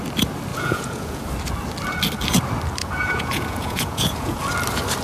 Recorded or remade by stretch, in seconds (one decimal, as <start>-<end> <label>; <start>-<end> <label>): 0.0-0.5 recorded; 0.5-1.3 remade; 1.3-2.8 recorded; 2.8-4.4 remade; 4.4-5.0 recorded